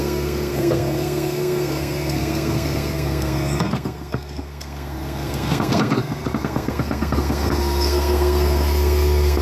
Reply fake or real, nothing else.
fake